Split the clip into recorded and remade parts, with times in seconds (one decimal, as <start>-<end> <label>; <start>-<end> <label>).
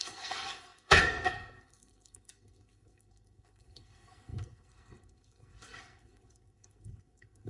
0.0-7.5 remade